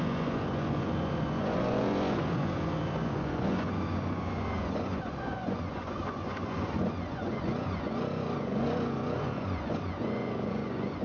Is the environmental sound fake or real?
fake